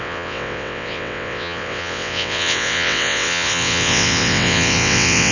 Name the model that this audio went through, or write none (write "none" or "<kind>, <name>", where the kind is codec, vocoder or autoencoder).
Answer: vocoder, WaveNeXt